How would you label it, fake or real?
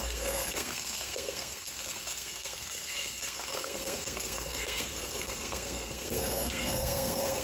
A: fake